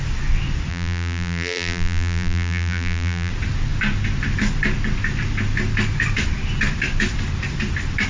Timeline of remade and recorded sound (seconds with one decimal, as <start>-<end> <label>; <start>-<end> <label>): 0.0-0.7 recorded; 0.7-3.3 remade; 3.3-8.1 recorded